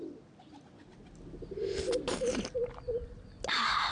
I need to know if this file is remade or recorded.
recorded